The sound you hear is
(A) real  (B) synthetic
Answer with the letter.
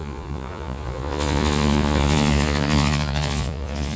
B